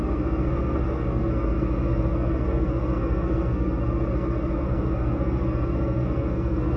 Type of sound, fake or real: fake